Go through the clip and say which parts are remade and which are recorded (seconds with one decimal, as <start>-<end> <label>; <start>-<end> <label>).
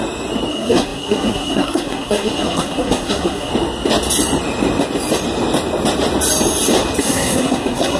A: 0.0-0.5 recorded; 0.5-3.5 remade; 3.5-7.0 recorded; 7.0-8.0 remade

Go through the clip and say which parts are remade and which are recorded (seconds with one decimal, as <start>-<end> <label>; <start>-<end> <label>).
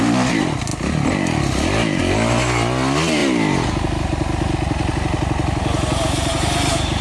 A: 0.0-7.0 recorded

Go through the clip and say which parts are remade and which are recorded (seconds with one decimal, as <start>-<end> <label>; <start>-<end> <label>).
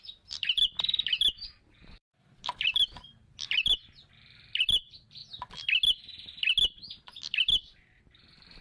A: 0.0-5.2 remade; 5.2-7.2 recorded; 7.2-8.6 remade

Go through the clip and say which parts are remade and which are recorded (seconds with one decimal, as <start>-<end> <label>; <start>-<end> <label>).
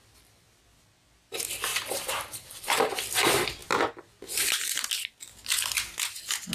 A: 0.0-1.7 recorded; 1.7-2.9 remade; 2.9-6.5 recorded